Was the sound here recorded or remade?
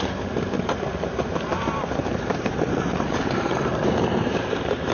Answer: remade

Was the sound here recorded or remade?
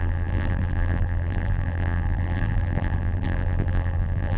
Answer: remade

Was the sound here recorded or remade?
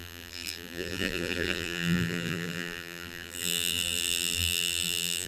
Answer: remade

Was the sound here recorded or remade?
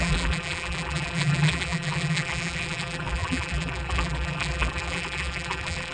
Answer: remade